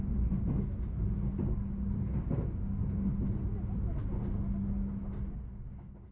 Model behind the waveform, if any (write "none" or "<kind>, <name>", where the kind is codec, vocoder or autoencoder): none